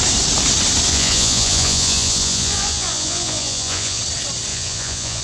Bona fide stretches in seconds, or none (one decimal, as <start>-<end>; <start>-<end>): 0.0-0.9; 4.0-4.5